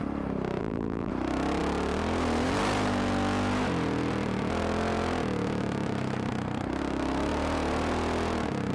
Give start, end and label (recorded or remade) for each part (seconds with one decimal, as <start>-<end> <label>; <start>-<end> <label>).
0.0-0.6 recorded; 0.6-1.1 remade; 1.1-8.7 recorded

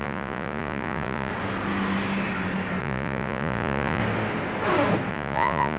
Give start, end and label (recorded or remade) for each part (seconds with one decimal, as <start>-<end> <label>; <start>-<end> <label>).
0.0-1.3 remade; 1.3-2.8 recorded; 2.8-4.0 remade; 4.0-5.1 recorded; 5.1-5.8 remade